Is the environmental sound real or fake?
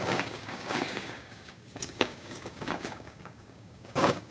fake